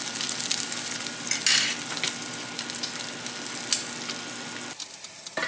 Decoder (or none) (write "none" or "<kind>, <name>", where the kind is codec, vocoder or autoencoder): none